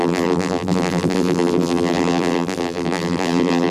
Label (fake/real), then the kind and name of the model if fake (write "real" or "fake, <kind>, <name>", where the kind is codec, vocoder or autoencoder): fake, vocoder, BigVGAN v2